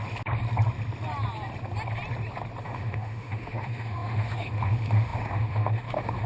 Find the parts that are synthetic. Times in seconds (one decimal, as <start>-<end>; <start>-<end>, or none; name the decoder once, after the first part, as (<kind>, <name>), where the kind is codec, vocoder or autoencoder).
2.6-6.3 (autoencoder, DAC-VAE)